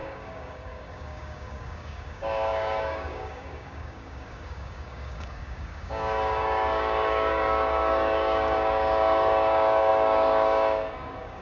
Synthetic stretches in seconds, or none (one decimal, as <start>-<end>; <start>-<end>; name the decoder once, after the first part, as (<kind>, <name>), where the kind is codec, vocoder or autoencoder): 0.0-11.4 (codec, DAC)